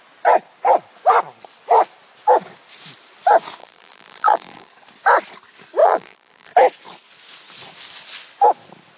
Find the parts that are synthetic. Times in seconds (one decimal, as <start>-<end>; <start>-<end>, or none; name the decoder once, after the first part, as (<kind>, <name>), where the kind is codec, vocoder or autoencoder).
3.6-4.7 (vocoder, BigVGAN v2); 5.8-6.5